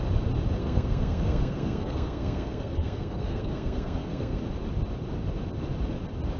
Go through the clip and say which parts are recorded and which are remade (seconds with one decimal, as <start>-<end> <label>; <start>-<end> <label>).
0.0-0.6 recorded; 0.6-4.4 remade; 4.4-6.4 recorded